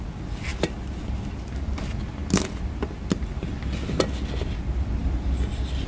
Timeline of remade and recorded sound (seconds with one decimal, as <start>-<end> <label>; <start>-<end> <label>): 0.0-0.5 recorded; 0.5-1.0 remade; 1.0-5.0 recorded; 5.0-5.9 remade